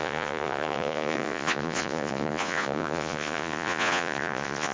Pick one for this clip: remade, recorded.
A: remade